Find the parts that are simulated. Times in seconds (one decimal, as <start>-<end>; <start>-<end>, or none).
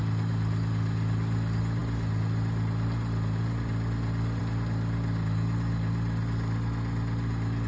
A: none